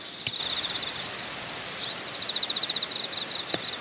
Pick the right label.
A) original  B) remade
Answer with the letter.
A